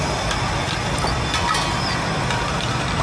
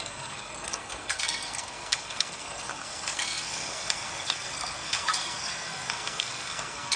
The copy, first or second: second